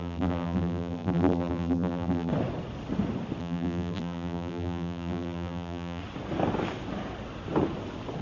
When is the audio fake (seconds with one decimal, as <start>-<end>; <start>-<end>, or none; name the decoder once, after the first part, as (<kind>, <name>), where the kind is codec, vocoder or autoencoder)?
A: 0.0-2.3 (vocoder, BigVGAN v2); 3.4-6.0